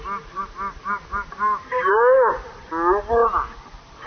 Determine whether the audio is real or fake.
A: real